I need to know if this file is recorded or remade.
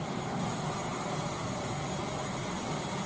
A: recorded